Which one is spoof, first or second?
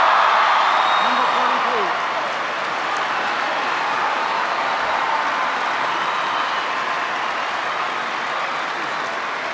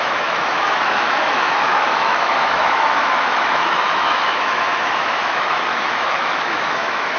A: second